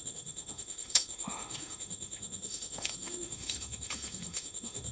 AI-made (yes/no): yes